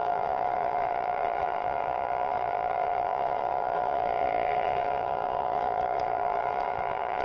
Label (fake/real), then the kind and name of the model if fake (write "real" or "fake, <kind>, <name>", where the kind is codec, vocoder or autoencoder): fake, vocoder, Vocos